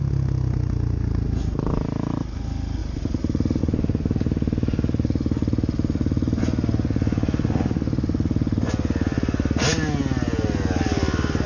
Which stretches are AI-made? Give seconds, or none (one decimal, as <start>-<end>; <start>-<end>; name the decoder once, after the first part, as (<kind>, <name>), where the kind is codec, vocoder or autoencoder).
2.8-3.6 (vocoder, BigVGAN v2)